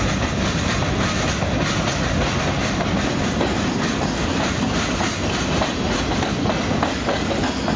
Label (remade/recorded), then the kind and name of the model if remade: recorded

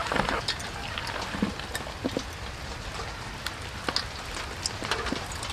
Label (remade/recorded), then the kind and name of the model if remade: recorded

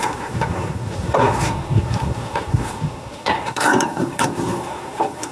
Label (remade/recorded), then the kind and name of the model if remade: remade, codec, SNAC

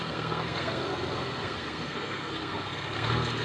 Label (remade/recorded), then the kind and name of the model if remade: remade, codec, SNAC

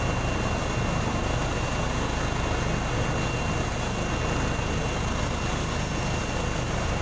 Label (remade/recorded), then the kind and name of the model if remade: recorded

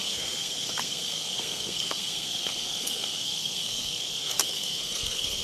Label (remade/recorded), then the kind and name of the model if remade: remade, codec, SNAC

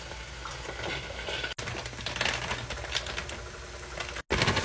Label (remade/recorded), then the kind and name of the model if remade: recorded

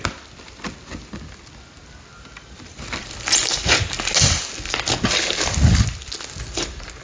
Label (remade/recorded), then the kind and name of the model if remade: recorded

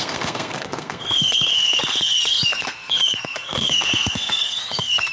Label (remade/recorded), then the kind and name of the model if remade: remade, codec, SNAC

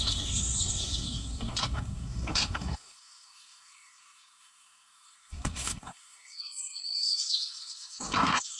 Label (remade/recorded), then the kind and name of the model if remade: remade, codec, SNAC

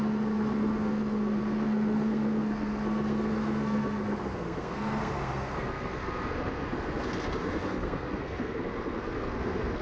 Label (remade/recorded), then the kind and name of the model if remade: remade, codec, SNAC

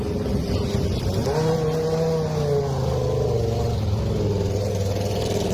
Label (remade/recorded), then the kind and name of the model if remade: recorded